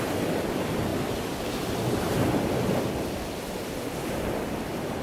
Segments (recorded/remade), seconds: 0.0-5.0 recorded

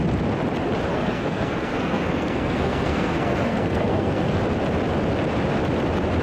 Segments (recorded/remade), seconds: 0.0-0.9 recorded; 0.9-4.4 remade; 4.4-6.2 recorded

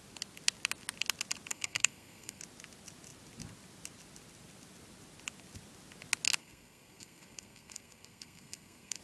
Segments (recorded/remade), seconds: 0.0-1.5 recorded; 1.5-2.4 remade; 2.4-6.4 recorded; 6.4-9.0 remade